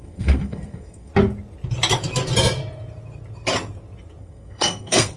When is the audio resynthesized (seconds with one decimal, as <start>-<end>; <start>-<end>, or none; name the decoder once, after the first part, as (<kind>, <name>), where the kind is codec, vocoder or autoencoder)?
0.0-1.1 (codec, SNAC); 4.2-5.2